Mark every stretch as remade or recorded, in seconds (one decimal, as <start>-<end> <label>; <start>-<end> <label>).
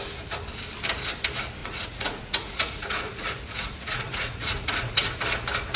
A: 0.0-1.6 recorded; 1.6-5.1 remade; 5.1-5.8 recorded